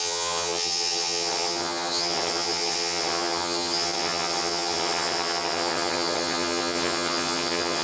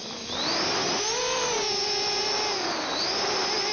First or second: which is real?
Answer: second